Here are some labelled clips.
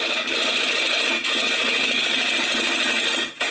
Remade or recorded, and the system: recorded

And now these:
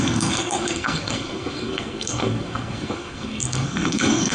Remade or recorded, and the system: remade, codec, SNAC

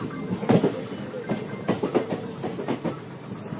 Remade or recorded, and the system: recorded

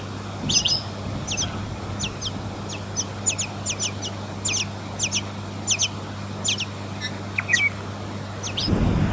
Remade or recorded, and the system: recorded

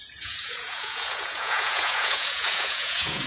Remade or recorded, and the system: remade, vocoder, Vocos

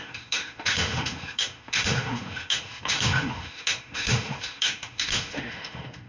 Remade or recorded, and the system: remade, autoencoder, DAC-VAE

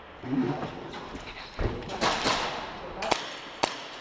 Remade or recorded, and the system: recorded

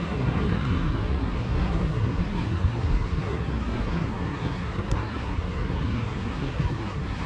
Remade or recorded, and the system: remade, codec, SNAC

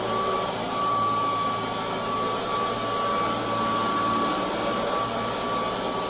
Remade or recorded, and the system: recorded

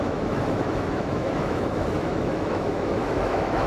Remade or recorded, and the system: remade, autoencoder, DAC-VAE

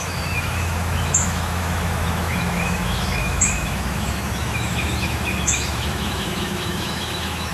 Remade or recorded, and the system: remade, autoencoder, DAC-VAE